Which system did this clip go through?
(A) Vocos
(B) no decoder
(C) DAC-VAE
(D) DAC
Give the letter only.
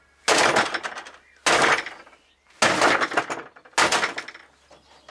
B